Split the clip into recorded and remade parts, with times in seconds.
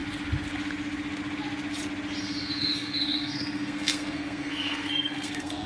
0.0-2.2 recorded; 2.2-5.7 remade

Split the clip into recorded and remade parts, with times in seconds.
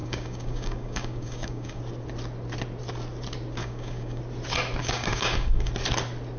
0.0-1.8 remade; 1.8-3.6 recorded; 3.6-4.2 remade; 4.2-4.8 recorded; 4.8-5.7 remade; 5.7-6.4 recorded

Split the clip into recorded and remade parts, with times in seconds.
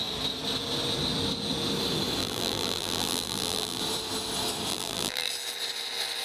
0.0-2.2 recorded; 2.2-3.8 remade; 3.8-4.7 recorded; 4.7-5.3 remade; 5.3-6.2 recorded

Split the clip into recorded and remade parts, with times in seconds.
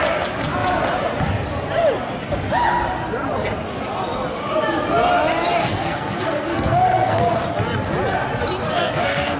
0.0-5.6 recorded; 5.6-7.4 remade; 7.4-8.7 recorded; 8.7-9.4 remade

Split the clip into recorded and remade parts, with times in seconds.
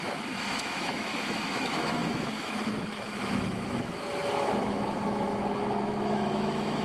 0.0-6.8 remade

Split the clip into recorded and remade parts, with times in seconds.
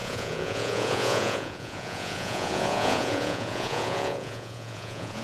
0.0-5.2 remade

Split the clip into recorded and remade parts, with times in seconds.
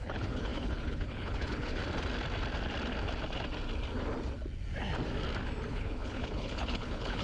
0.0-1.8 remade; 1.8-5.7 recorded; 5.7-7.2 remade